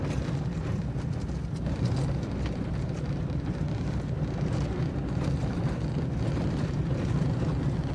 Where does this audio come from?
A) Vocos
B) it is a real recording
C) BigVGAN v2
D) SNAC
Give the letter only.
B